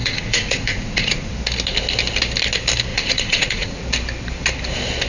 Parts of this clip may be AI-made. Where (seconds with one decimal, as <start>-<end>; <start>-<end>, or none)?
0.0-1.3; 2.9-3.8